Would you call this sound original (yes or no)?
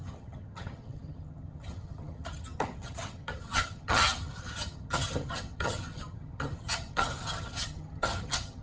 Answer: no